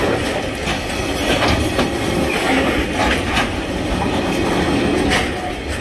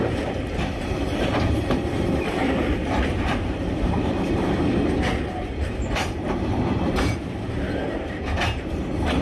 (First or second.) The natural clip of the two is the first